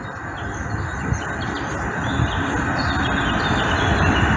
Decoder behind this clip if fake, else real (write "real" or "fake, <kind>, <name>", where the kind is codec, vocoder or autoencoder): real